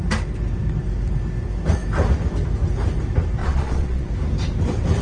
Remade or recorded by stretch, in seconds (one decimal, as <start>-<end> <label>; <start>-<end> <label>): 0.0-3.4 recorded; 3.4-4.1 remade; 4.1-5.0 recorded